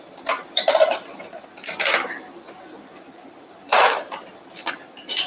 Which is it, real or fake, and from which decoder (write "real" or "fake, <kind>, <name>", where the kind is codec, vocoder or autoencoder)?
fake, vocoder, BigVGAN v2